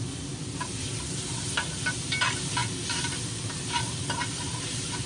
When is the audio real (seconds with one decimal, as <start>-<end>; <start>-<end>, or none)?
0.0-4.5